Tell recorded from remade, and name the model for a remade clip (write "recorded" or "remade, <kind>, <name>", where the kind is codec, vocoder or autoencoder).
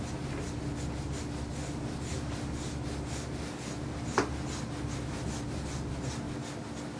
recorded